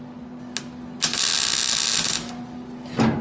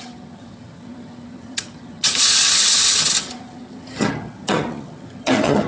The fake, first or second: second